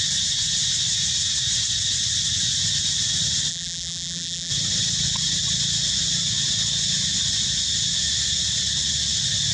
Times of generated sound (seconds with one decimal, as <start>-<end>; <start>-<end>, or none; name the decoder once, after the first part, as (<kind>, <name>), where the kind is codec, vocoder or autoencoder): 3.5-4.5 (vocoder, BigVGAN v2)